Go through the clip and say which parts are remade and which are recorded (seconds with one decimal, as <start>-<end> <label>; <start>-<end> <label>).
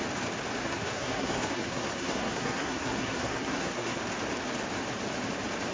0.0-0.6 recorded; 0.6-4.0 remade; 4.0-5.7 recorded